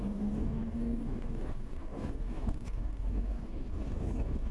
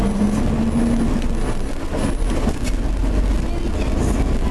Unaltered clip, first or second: second